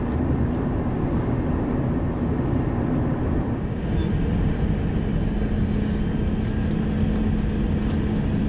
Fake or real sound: real